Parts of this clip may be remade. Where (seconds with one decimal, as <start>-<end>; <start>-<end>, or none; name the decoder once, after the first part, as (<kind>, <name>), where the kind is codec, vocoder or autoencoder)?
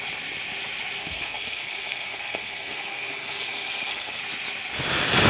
1.0-4.2 (codec, SNAC)